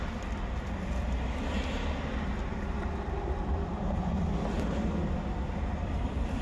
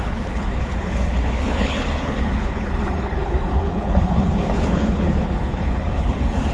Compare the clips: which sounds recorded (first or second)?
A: first